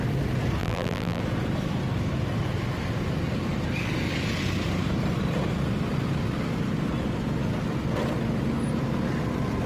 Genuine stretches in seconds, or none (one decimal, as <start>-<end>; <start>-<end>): 0.0-0.6; 1.2-9.7